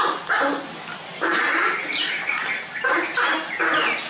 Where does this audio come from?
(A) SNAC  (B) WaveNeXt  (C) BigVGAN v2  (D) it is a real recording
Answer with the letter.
D